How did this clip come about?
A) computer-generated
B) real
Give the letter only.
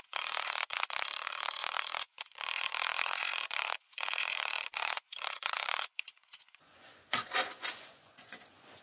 A